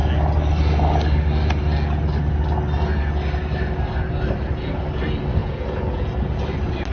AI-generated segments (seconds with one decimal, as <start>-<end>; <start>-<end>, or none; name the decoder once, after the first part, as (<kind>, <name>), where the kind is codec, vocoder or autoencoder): 5.4-6.1 (vocoder, Vocos)